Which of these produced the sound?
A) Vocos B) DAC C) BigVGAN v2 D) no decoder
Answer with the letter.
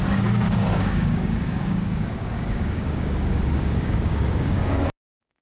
B